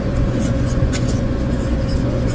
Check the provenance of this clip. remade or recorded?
remade